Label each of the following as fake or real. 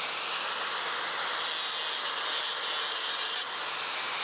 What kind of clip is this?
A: real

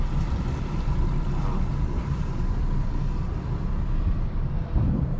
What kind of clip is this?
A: fake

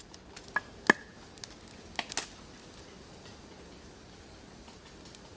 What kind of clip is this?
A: real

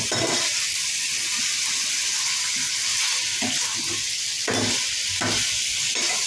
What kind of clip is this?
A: real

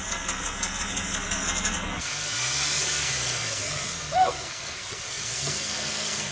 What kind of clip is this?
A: fake